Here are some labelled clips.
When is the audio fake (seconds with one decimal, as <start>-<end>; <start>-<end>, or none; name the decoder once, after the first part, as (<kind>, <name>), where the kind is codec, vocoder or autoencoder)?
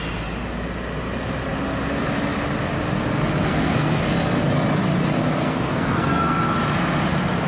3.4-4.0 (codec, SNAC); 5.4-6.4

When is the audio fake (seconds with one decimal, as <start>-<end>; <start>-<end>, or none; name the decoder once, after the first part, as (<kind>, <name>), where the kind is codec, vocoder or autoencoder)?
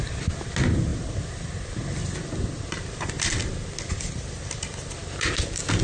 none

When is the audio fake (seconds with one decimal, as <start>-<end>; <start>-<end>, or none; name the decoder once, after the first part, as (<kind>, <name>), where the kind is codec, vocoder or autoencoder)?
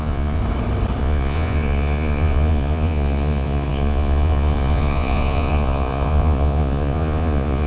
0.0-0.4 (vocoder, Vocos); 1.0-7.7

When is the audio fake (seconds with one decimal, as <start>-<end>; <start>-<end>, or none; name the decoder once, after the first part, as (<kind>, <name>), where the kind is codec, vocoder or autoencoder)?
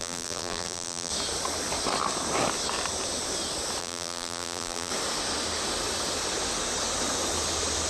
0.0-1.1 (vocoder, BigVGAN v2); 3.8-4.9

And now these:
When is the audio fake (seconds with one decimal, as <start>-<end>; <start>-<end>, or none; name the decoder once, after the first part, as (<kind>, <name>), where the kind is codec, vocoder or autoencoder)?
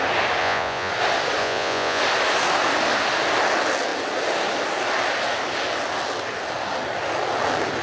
0.4-0.9 (vocoder, Vocos); 1.4-2.0